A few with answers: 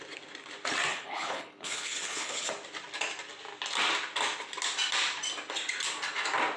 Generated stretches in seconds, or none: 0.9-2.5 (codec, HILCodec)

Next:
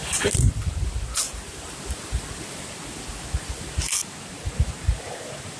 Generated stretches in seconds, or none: none